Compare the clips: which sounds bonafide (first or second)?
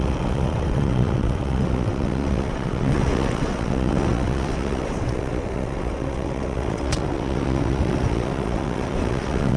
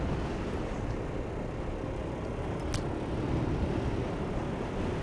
second